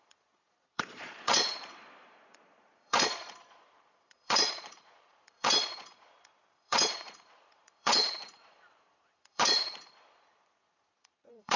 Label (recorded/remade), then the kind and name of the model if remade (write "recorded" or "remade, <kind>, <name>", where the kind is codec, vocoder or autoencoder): remade, vocoder, Vocos